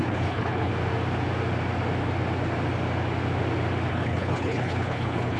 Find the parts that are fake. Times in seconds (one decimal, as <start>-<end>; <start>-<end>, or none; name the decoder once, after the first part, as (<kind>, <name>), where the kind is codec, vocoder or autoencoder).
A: 0.0-0.7 (codec, HILCodec); 3.9-5.4